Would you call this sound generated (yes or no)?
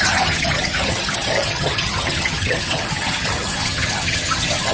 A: yes